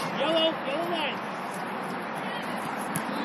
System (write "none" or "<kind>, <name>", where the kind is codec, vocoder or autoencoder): none